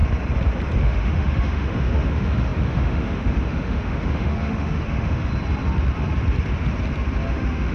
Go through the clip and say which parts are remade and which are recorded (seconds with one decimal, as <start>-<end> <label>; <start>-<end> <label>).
0.0-0.8 recorded; 0.8-5.3 remade; 5.3-7.3 recorded; 7.3-7.7 remade